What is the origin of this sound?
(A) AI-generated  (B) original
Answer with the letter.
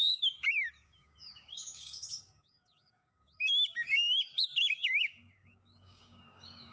A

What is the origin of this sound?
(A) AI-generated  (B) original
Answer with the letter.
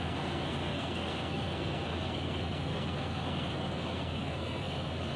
A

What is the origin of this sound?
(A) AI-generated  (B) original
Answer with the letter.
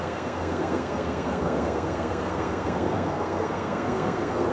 A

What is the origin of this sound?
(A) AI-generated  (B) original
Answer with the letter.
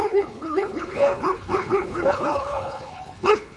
A